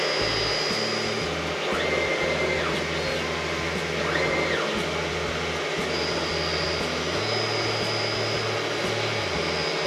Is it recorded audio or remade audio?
recorded